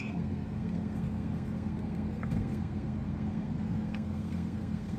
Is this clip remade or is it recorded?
remade